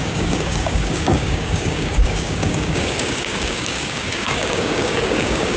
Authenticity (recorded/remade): remade